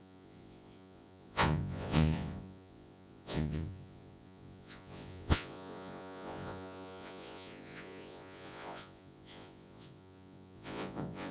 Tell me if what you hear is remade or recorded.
remade